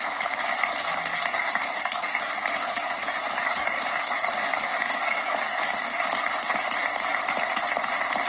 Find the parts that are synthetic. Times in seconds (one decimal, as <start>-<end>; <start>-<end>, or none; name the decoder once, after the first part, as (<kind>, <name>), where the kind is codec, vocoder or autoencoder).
1.1-6.1 (codec, DAC)